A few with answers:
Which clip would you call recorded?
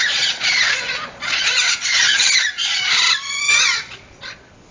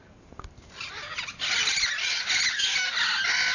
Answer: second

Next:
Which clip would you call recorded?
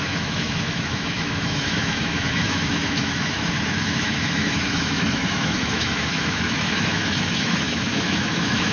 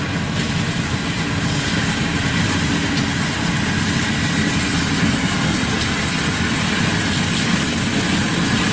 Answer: second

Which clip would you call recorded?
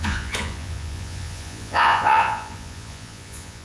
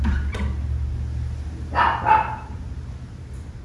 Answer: second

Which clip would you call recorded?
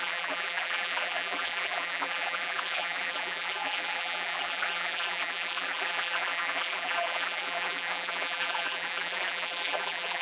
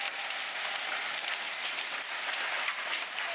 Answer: second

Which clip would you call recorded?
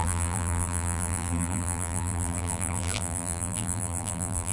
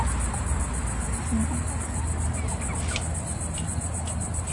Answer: second